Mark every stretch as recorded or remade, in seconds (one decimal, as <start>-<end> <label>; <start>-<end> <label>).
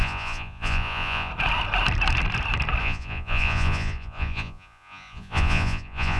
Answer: 0.0-1.3 remade; 1.3-2.8 recorded; 2.8-6.2 remade